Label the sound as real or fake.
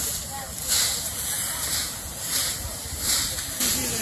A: fake